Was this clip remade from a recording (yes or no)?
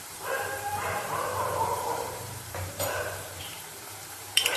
yes